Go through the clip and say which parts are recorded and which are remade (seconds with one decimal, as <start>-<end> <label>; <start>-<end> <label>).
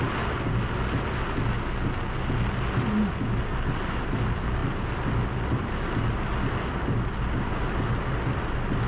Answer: 0.0-8.9 recorded